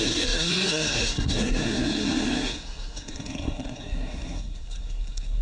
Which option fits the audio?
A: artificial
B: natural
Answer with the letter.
A